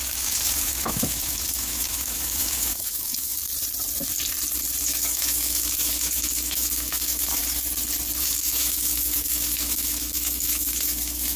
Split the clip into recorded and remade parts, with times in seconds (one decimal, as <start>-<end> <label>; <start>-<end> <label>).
0.0-3.4 remade; 3.4-4.8 recorded; 4.8-7.4 remade; 7.4-8.2 recorded; 8.2-11.4 remade